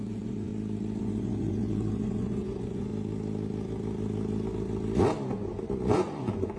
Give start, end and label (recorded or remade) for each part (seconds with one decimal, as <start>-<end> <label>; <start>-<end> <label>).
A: 0.0-0.5 remade; 0.5-1.0 recorded; 1.0-2.9 remade; 2.9-5.9 recorded; 5.9-6.6 remade